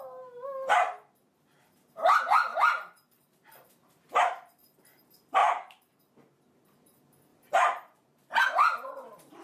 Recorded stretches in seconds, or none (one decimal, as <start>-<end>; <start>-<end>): 0.0-2.5; 4.2-5.4; 6.0-7.3; 8.4-9.4